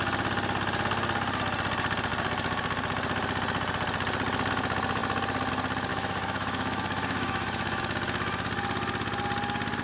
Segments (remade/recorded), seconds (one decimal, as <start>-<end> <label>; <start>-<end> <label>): 0.0-5.9 recorded; 5.9-7.8 remade; 7.8-9.8 recorded